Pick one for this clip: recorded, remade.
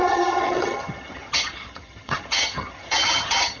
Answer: remade